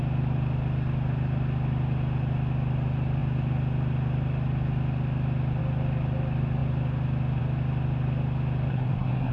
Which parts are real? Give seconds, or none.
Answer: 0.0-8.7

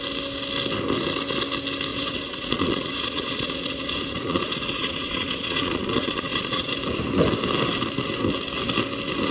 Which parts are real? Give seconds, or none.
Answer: 0.0-1.9; 6.7-9.3

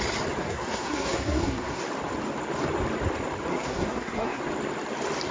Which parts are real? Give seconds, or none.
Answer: 0.0-0.4; 1.8-3.5; 4.4-5.3

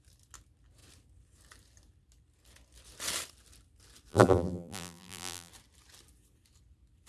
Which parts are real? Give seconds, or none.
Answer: 0.0-4.1; 5.5-7.1